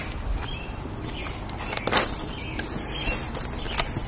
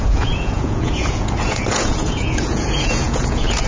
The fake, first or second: second